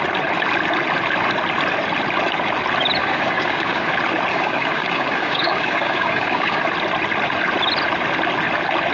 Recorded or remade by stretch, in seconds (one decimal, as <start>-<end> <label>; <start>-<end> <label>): 0.0-3.0 recorded; 3.0-3.9 remade; 3.9-4.3 recorded; 4.3-6.6 remade; 6.6-8.9 recorded